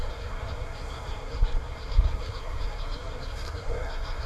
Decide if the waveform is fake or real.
fake